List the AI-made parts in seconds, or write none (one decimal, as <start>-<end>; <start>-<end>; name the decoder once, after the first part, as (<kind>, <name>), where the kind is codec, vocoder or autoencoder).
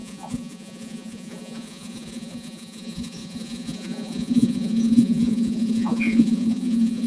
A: 0.0-7.1 (vocoder, Vocos)